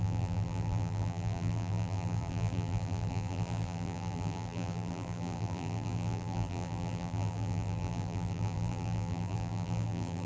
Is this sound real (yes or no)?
no